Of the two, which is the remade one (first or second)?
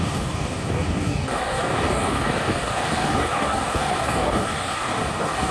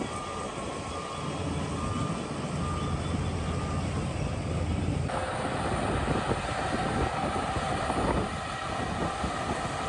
first